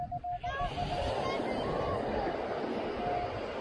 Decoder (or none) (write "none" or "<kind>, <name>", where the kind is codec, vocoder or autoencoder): none